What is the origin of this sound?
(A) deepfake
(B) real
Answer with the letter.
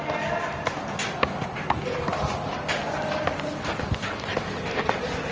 B